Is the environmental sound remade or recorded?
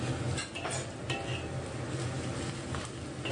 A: recorded